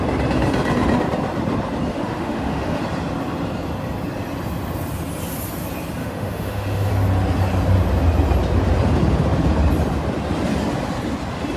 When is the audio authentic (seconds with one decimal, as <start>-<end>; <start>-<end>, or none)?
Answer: 0.0-1.9; 2.8-6.0; 6.9-11.6